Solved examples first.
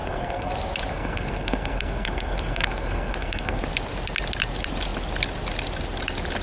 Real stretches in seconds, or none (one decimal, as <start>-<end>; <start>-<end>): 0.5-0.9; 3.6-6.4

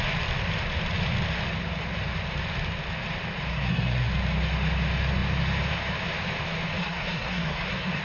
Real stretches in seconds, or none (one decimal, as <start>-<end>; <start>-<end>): 0.0-3.5; 4.1-6.8

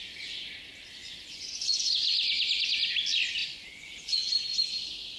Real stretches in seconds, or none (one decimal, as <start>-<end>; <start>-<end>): 0.0-1.0; 1.9-3.4; 4.2-5.2

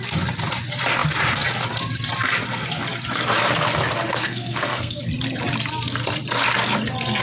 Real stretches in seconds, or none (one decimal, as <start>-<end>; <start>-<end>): 0.0-4.1; 5.0-7.2

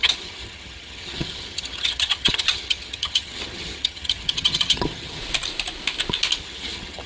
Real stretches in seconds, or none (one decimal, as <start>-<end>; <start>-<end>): 5.2-6.4

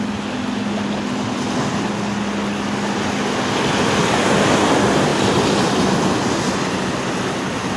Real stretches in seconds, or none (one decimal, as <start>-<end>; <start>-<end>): 0.0-7.8